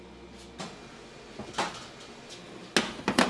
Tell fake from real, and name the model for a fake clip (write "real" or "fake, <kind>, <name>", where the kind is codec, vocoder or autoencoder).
real